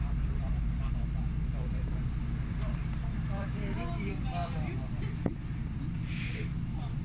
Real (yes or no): no